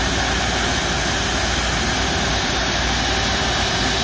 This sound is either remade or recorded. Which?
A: recorded